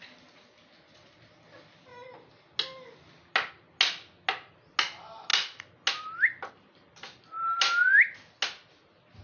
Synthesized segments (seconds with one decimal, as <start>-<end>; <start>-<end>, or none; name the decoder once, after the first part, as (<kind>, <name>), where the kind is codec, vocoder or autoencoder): none